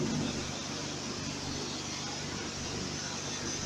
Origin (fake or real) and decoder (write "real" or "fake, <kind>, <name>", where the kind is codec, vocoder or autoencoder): real